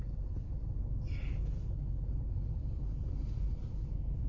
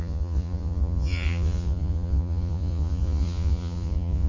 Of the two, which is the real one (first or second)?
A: first